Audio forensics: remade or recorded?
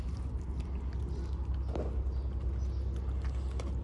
recorded